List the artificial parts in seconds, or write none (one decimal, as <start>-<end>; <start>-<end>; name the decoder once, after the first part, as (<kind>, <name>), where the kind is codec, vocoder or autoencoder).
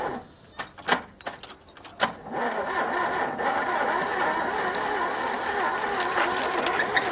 none